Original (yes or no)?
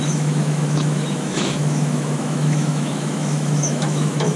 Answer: no